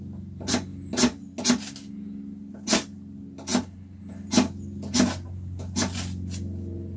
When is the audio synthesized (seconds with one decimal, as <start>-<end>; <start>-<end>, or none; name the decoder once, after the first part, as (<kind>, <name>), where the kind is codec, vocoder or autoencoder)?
none